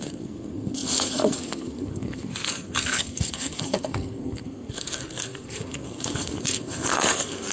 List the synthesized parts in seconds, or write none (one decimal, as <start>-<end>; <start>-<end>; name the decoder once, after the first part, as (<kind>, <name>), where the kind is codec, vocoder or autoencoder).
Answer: 0.0-7.5 (codec, SNAC)